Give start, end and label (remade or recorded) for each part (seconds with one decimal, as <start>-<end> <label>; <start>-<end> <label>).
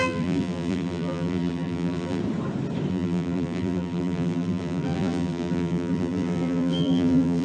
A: 0.0-2.2 remade; 2.2-2.9 recorded; 2.9-7.4 remade